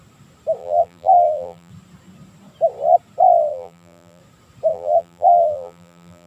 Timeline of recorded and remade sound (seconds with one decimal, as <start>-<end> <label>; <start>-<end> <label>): 0.0-0.6 recorded; 0.6-1.7 remade; 1.7-3.5 recorded; 3.5-4.2 remade; 4.2-4.7 recorded; 4.7-6.3 remade